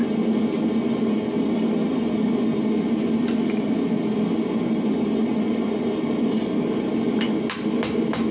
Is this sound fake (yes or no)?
no